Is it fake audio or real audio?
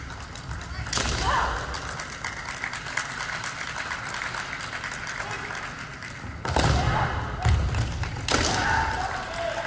real